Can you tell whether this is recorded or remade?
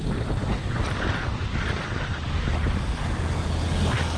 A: recorded